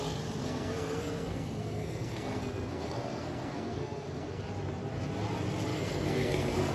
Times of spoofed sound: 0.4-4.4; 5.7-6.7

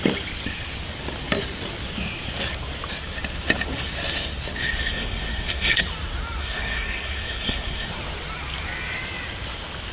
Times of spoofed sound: 4.6-5.8; 6.4-7.9

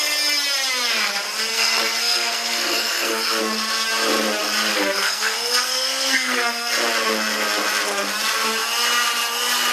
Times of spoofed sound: 1.5-3.4; 4.7-6.7

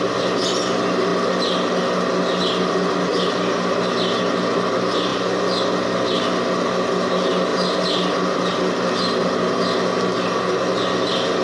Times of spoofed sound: none